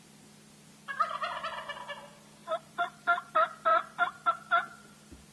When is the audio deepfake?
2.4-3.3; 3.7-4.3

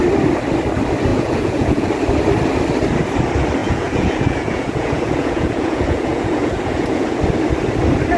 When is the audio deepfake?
1.1-1.9; 3.6-7.2

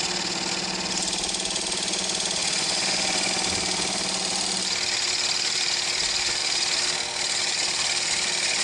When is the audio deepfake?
2.4-3.3